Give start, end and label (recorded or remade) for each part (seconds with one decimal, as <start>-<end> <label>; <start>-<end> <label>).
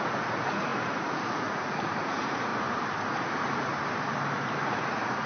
0.0-2.5 remade; 2.5-3.0 recorded; 3.0-3.7 remade; 3.7-4.6 recorded; 4.6-5.3 remade